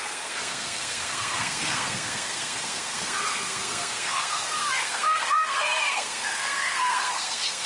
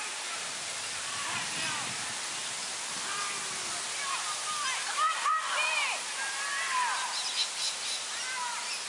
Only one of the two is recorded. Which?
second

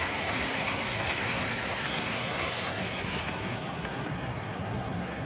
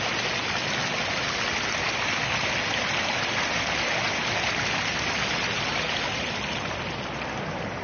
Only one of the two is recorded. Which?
second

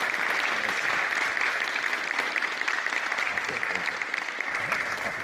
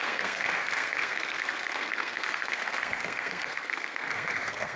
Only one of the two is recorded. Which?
first